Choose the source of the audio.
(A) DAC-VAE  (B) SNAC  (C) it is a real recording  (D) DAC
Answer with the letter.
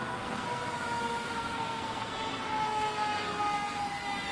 B